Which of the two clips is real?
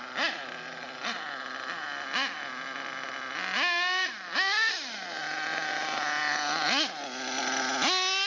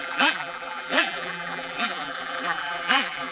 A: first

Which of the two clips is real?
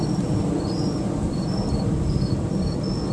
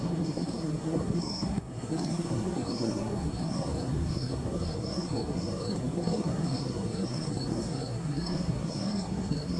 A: first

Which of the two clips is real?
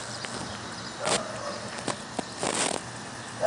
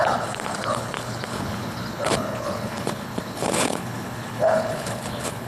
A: first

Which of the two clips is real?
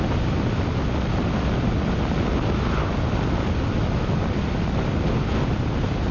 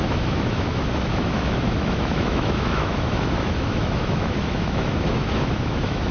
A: first